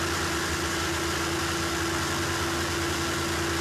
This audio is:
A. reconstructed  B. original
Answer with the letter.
B